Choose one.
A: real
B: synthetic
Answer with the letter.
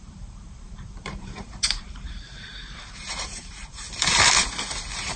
B